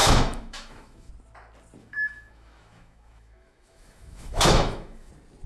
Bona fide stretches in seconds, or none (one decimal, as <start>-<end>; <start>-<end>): 1.1-1.8; 5.1-5.5